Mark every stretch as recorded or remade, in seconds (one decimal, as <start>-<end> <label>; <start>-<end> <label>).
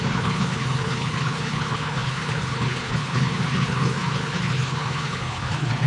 0.0-5.9 remade